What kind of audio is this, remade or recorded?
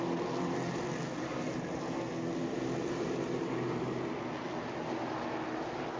recorded